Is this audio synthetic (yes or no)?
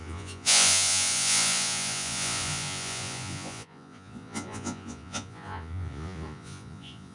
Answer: yes